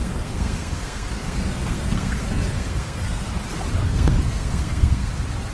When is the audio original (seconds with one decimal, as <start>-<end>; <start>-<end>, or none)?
3.3-3.8; 5.1-5.5